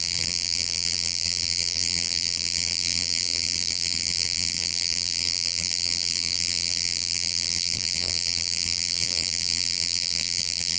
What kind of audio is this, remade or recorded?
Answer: remade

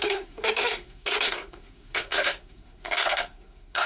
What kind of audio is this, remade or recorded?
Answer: remade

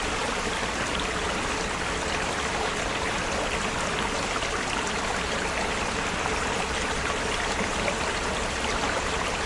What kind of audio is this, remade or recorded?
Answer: recorded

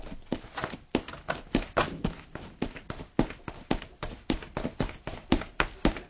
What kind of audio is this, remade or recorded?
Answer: recorded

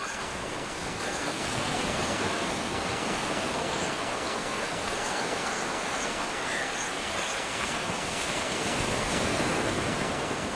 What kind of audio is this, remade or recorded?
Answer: remade